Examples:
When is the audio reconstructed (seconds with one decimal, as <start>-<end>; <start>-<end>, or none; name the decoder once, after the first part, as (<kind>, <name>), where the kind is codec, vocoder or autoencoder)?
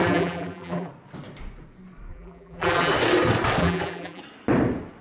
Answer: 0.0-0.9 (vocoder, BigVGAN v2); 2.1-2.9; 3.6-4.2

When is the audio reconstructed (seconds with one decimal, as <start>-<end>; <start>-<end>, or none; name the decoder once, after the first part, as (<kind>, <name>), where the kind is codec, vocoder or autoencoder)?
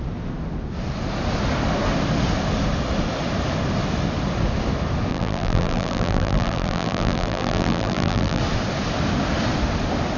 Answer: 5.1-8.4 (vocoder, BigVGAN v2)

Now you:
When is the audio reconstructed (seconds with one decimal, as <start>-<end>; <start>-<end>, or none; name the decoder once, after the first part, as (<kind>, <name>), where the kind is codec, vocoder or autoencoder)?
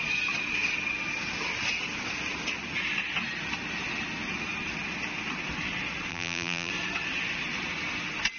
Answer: 6.1-6.7 (vocoder, BigVGAN v2)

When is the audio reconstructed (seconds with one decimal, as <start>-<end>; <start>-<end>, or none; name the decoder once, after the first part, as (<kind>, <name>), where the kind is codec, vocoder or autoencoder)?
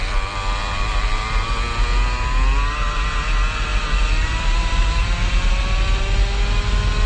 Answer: 0.6-1.5 (vocoder, BigVGAN v2); 3.7-5.5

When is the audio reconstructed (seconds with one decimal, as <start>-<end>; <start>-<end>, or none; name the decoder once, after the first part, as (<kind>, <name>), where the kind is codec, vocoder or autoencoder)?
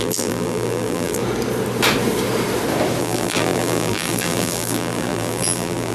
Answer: 0.0-1.2 (vocoder, BigVGAN v2); 3.0-5.9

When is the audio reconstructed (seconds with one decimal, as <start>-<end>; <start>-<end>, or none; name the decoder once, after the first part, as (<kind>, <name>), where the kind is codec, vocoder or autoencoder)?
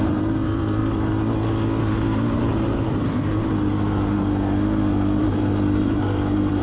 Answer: 0.0-0.8 (vocoder, BigVGAN v2); 1.8-3.7; 5.2-6.6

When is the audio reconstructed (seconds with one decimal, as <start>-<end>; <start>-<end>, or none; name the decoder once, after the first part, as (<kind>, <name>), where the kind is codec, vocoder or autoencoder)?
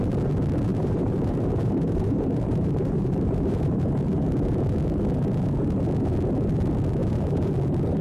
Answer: 0.7-3.9 (vocoder, BigVGAN v2); 7.0-7.6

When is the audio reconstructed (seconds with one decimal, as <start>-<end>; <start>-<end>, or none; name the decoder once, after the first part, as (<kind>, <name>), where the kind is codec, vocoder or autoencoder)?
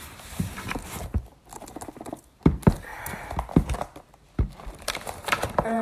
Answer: 0.0-2.9 (vocoder, BigVGAN v2); 4.0-5.8